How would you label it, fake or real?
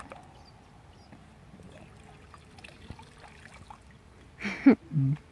real